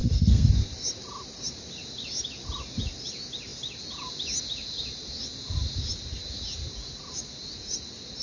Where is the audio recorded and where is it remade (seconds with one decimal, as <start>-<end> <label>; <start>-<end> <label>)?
0.0-0.5 remade; 0.5-8.2 recorded